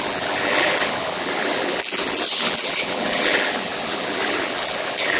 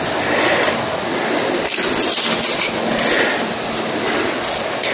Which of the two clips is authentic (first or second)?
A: second